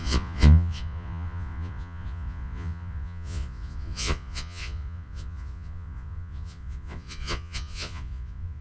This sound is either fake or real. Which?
fake